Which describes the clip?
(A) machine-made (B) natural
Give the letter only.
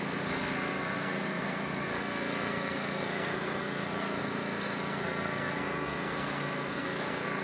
A